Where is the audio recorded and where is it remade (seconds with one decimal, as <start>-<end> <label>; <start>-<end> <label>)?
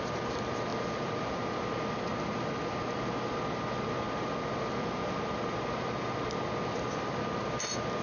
0.0-0.7 recorded; 0.7-1.4 remade; 1.4-8.0 recorded